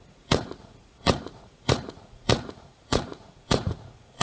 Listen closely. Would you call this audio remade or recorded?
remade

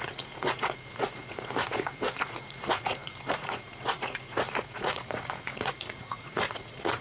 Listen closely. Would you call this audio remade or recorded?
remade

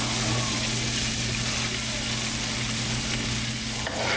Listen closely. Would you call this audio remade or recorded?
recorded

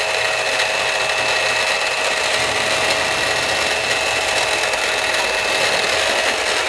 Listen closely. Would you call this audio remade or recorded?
recorded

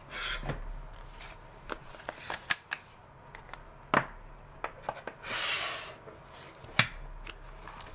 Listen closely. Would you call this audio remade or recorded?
recorded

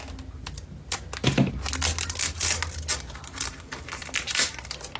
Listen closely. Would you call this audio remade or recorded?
recorded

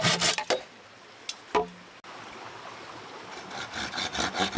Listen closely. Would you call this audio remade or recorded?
recorded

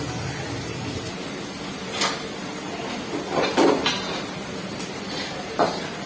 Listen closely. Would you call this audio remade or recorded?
recorded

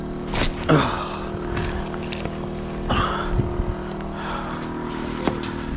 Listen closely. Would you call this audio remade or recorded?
recorded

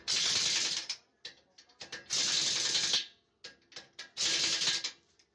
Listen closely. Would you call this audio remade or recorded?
recorded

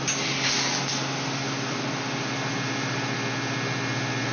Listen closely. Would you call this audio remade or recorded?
recorded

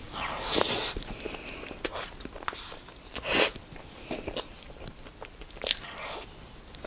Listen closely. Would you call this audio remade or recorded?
recorded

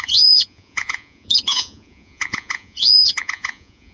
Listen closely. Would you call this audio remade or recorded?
remade